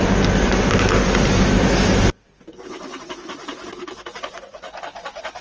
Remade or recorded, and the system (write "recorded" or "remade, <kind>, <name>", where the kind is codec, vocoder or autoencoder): recorded